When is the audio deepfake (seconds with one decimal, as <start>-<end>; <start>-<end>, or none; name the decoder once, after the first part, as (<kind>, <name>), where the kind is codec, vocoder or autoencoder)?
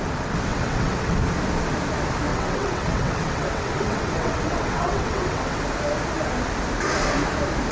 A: 0.5-1.2 (vocoder, WaveNeXt); 2.3-5.6